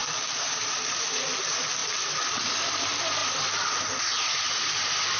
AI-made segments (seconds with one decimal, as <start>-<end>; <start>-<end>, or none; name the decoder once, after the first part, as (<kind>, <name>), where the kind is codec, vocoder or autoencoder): 0.0-0.6 (vocoder, BigVGAN v2); 1.8-2.4; 3.2-4.5